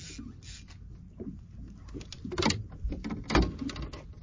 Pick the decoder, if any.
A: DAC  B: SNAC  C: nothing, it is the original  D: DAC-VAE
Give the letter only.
C